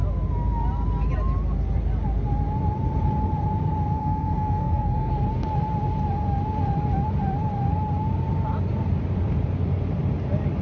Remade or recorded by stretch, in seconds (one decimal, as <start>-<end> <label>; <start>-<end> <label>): 0.0-4.0 recorded; 4.0-5.1 remade; 5.1-10.6 recorded